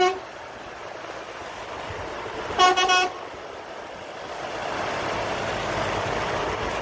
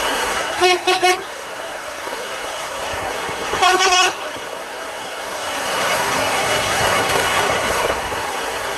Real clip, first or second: first